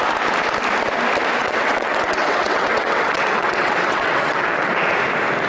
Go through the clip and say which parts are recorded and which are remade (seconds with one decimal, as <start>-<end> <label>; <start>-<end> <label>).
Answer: 0.0-1.4 recorded; 1.4-4.7 remade; 4.7-5.5 recorded